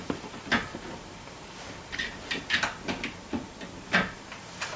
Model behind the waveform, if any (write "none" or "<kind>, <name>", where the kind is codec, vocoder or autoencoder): none